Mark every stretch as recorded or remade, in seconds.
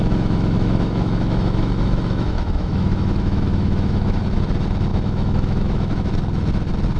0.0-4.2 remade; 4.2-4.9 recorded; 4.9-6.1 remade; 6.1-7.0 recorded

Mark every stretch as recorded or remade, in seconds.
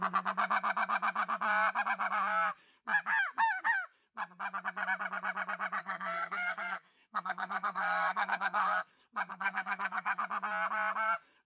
0.0-5.8 recorded; 5.8-8.9 remade; 8.9-9.3 recorded; 9.3-10.2 remade; 10.2-11.4 recorded